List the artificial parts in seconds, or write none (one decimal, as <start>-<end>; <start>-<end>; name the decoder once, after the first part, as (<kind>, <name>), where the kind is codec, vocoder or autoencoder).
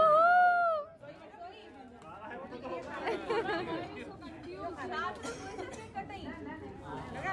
none